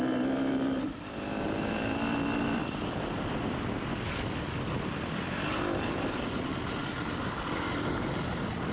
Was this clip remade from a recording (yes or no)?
no